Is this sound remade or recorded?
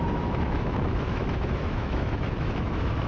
remade